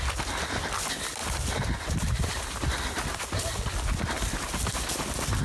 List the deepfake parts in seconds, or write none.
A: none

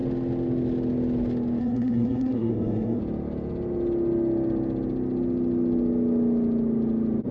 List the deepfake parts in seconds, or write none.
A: 1.6-3.0 (codec, SNAC)